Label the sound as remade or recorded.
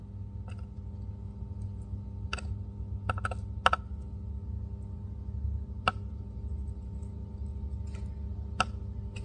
recorded